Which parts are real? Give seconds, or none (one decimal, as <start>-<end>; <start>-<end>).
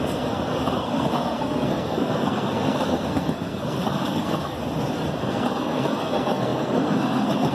4.6-5.2